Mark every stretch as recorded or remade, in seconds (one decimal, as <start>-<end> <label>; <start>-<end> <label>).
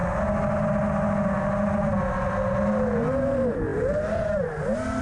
0.0-5.0 recorded